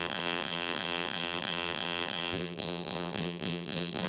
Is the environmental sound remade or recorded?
remade